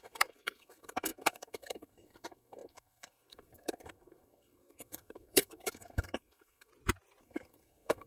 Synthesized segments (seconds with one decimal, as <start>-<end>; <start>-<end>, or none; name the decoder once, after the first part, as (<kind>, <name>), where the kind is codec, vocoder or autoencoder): 0.0-6.7 (codec, SNAC); 7.2-8.1